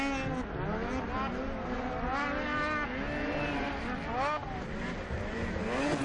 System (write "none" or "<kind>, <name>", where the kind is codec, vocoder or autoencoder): none